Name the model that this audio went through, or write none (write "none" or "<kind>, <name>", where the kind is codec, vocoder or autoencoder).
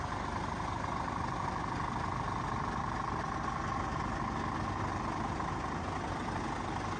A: none